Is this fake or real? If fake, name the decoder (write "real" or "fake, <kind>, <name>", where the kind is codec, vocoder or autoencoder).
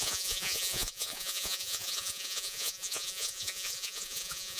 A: fake, vocoder, Vocos